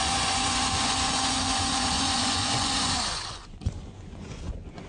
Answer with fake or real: fake